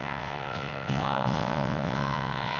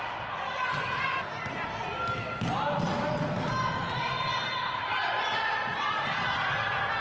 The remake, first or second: first